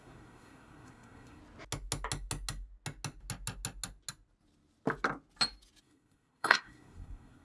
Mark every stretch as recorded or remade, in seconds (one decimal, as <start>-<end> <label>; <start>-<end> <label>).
0.0-1.4 remade; 1.4-5.8 recorded; 5.8-7.4 remade